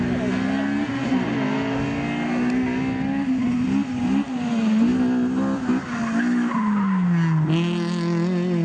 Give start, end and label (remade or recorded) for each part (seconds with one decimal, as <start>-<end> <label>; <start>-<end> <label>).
0.0-8.6 recorded